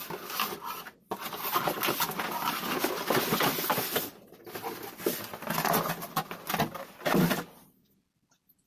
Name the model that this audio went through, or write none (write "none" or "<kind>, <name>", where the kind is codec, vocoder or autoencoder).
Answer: none